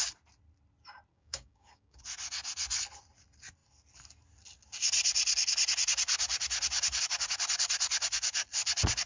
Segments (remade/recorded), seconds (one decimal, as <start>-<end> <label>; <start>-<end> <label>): 0.0-1.1 recorded; 1.1-2.0 remade; 2.0-9.1 recorded